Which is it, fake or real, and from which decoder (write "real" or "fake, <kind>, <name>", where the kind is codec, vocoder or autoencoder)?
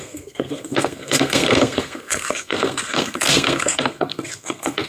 fake, codec, SNAC